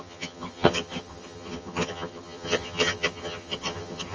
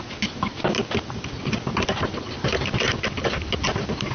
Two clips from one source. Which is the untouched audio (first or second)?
second